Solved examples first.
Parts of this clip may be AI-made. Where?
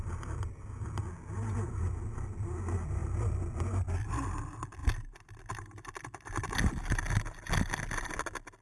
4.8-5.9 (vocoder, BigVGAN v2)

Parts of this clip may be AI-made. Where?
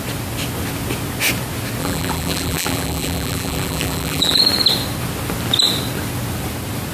1.8-4.4 (vocoder, BigVGAN v2)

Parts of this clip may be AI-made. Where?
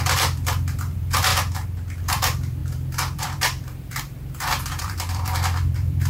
0.0-1.3 (vocoder, BigVGAN v2); 2.0-6.1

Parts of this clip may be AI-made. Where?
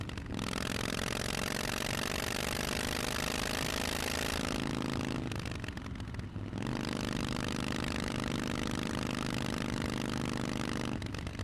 none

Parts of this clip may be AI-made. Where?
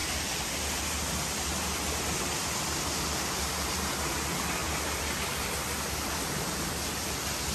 4.6-6.1 (vocoder, BigVGAN v2)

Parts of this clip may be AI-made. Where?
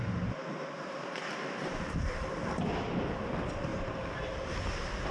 0.5-2.5 (vocoder, BigVGAN v2); 3.7-5.1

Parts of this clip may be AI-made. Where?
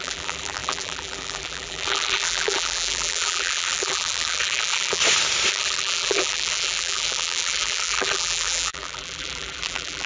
0.0-5.0 (vocoder, BigVGAN v2); 5.5-10.1